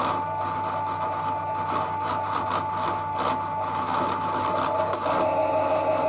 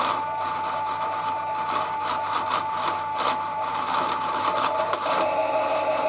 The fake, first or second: second